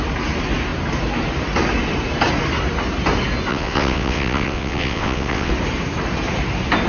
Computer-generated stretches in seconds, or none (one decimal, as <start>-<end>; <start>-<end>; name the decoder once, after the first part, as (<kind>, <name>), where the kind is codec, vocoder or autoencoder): 3.5-5.5 (vocoder, WaveNeXt)